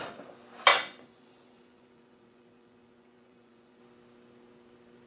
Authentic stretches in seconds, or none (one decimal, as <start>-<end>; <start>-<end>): 0.0-0.7; 3.8-5.1